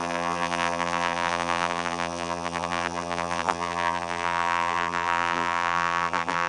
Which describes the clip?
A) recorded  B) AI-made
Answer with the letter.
B